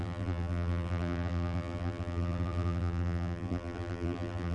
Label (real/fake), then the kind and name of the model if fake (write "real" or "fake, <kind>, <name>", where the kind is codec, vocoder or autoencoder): fake, vocoder, BigVGAN v2